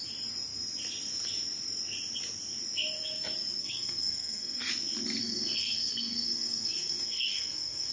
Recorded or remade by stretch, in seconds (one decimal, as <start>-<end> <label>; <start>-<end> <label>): 0.0-3.6 recorded; 3.6-4.7 remade; 4.7-5.2 recorded; 5.2-7.9 remade

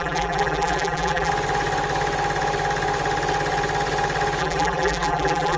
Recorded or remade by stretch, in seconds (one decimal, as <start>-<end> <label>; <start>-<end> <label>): 0.0-1.3 remade; 1.3-4.4 recorded; 4.4-5.6 remade